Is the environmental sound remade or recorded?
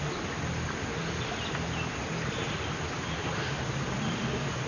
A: recorded